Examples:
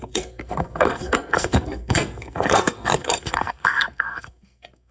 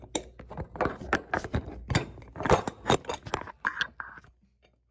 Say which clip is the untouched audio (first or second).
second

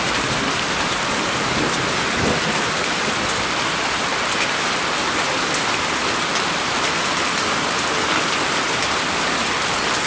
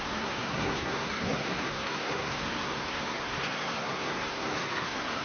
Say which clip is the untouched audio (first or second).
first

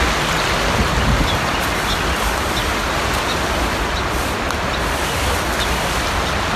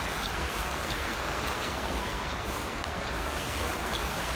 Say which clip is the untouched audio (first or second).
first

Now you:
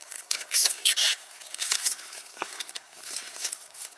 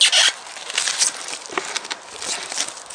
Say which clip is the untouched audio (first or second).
second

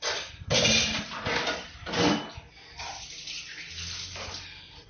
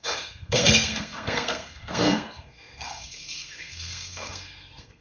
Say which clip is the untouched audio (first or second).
first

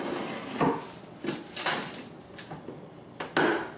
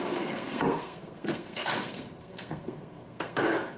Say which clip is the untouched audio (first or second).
first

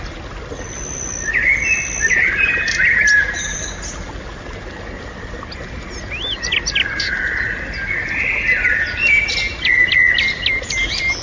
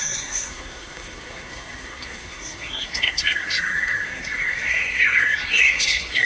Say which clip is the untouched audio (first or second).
first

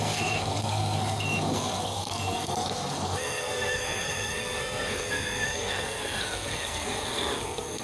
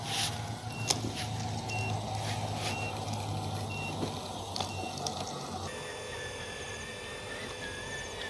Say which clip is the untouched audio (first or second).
second